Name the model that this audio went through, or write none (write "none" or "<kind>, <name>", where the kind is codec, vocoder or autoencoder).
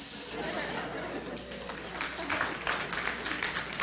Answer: none